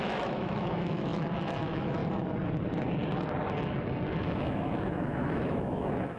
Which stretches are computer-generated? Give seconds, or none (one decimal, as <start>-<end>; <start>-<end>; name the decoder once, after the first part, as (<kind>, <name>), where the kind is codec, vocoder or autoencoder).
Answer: 0.0-2.0 (autoencoder, DAC-VAE); 4.2-6.2